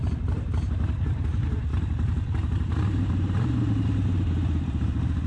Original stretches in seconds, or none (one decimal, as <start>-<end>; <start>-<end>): none